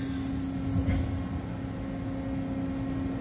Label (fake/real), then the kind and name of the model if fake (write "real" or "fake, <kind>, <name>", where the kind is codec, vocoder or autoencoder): real